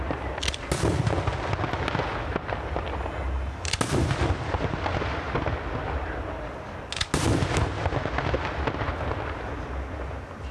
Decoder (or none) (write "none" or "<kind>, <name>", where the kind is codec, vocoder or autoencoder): none